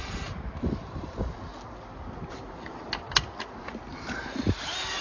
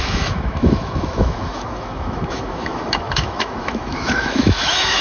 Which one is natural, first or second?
first